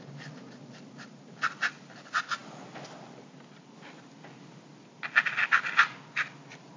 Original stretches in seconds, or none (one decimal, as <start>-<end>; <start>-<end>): 0.0-6.8